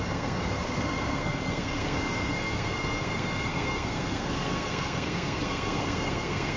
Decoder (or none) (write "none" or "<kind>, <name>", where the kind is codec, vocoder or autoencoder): codec, SNAC